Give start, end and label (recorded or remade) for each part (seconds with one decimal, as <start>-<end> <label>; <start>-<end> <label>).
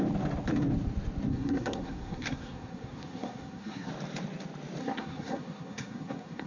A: 0.0-1.3 recorded; 1.3-3.9 remade; 3.9-4.8 recorded; 4.8-6.5 remade